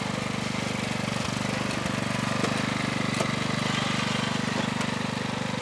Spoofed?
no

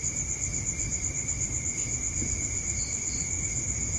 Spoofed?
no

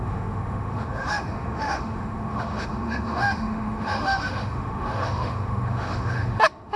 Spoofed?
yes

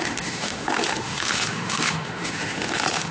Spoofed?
yes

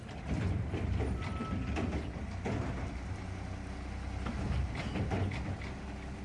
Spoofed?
no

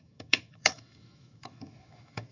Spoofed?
yes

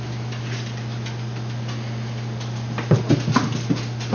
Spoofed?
no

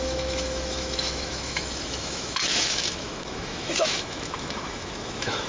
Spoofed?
yes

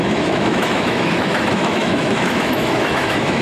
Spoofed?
yes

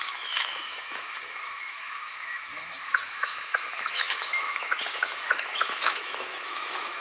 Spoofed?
yes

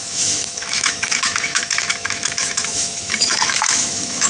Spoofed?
yes